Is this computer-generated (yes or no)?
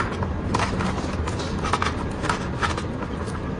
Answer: no